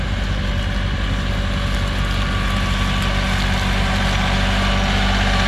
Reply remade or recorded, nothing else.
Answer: recorded